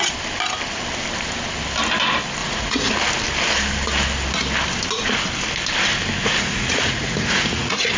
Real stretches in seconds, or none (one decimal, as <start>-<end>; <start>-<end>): 0.0-2.4; 2.9-6.2